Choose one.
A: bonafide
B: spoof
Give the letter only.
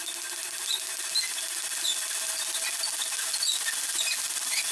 A